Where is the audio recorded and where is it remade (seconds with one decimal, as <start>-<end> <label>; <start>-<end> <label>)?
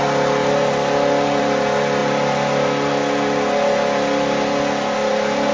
0.0-5.5 recorded